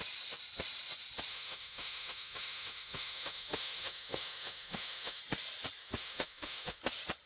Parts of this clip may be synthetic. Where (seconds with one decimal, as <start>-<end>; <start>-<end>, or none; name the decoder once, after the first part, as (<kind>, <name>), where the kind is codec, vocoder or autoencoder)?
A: 1.3-5.2 (autoencoder, DAC-VAE); 5.8-6.8